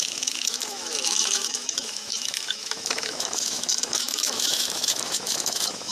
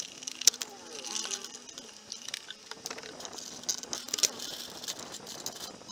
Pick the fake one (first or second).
first